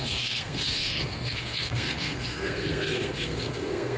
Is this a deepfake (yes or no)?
yes